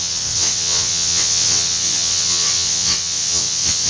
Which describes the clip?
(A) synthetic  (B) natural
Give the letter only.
A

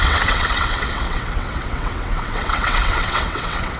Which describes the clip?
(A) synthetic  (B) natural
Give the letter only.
A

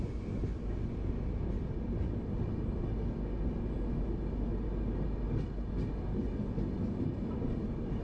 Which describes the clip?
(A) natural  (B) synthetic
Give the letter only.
A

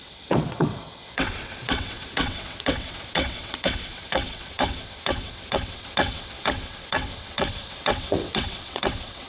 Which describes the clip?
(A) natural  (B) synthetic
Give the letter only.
B